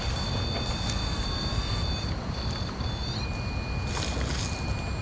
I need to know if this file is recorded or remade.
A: recorded